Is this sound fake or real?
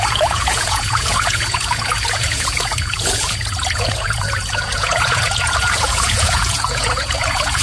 fake